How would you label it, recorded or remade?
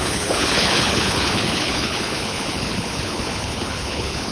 remade